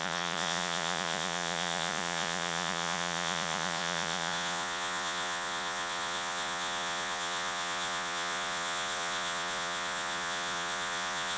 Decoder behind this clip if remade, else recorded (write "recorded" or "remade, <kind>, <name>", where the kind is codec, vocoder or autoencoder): remade, vocoder, Vocos